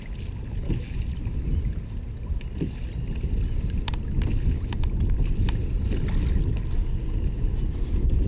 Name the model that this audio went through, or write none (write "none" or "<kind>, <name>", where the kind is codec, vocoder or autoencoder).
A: none